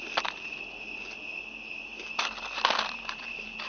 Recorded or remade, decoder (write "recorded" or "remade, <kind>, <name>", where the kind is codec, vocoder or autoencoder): recorded